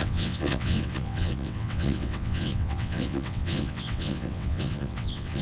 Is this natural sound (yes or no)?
no